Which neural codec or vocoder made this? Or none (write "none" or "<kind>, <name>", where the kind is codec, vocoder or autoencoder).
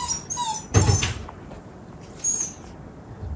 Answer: vocoder, BigVGAN v2